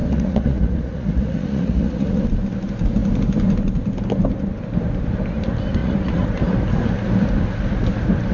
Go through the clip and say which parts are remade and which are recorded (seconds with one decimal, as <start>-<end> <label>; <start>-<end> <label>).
0.0-2.2 remade; 2.2-5.8 recorded; 5.8-6.3 remade; 6.3-8.3 recorded